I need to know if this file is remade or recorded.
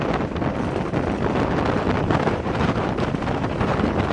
recorded